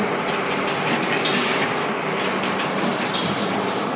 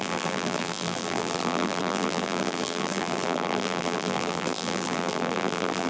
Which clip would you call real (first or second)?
first